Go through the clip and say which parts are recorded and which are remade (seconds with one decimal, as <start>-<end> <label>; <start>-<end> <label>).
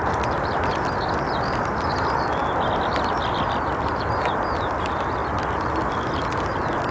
0.0-6.9 recorded